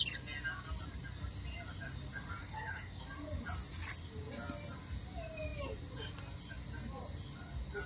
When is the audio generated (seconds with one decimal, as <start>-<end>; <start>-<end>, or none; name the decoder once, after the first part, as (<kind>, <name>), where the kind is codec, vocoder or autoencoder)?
2.4-3.0 (codec, DAC)